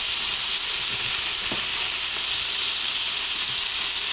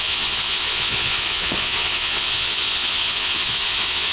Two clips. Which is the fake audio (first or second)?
second